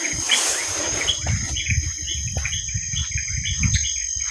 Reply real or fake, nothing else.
real